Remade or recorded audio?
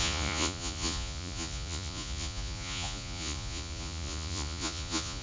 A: remade